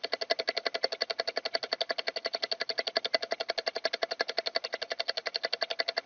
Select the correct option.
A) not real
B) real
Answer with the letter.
B